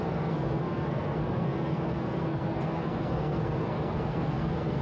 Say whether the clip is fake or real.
fake